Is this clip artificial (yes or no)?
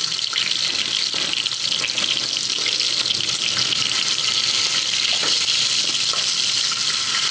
no